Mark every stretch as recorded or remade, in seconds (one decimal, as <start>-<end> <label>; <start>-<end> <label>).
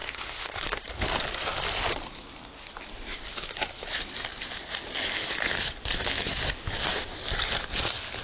0.0-0.8 remade; 0.8-8.2 recorded